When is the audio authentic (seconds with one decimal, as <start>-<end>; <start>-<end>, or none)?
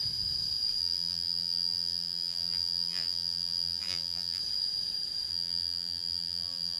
0.0-0.8; 4.4-5.3